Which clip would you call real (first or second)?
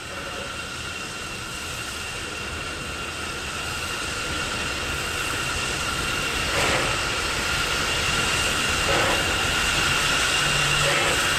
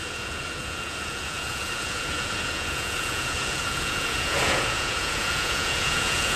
first